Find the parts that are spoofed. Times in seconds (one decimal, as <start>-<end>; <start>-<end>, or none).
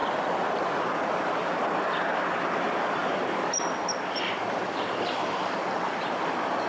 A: 0.8-6.7